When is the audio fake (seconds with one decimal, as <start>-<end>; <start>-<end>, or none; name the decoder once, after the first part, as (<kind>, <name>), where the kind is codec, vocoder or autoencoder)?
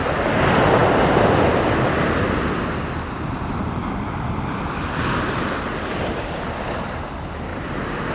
3.8-6.4 (vocoder, BigVGAN v2); 7.5-8.1